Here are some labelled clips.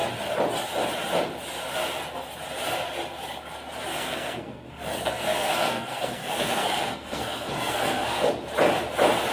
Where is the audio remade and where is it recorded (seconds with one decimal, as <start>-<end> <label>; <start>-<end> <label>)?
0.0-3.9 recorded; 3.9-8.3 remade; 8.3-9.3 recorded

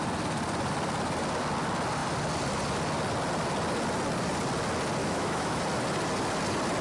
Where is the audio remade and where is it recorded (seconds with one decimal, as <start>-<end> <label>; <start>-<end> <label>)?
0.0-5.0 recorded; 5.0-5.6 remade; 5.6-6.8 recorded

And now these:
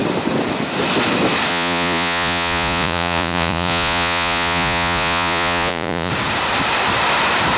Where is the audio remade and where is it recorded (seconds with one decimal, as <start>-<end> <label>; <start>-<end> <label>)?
0.0-1.5 recorded; 1.5-6.1 remade; 6.1-7.6 recorded

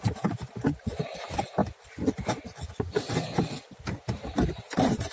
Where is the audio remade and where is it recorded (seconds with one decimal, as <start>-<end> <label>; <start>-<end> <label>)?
0.0-1.6 remade; 1.6-4.5 recorded; 4.5-5.1 remade

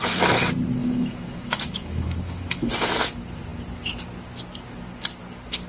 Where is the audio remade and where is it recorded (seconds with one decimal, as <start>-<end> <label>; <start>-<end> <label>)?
0.0-0.8 recorded; 0.8-2.7 remade; 2.7-5.7 recorded